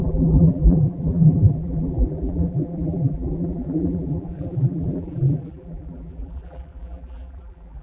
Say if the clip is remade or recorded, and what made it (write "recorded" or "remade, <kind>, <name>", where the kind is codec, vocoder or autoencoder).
remade, vocoder, BigVGAN v2